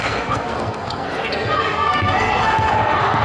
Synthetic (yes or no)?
yes